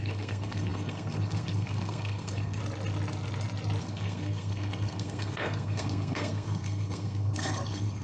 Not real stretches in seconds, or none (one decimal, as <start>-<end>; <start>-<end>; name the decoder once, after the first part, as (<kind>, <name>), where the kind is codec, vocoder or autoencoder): 0.0-2.6 (codec, SNAC); 3.8-8.0